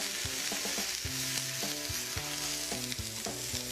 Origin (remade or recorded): recorded